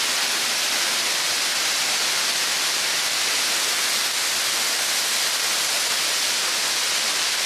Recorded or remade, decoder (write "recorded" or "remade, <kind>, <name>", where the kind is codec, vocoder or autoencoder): recorded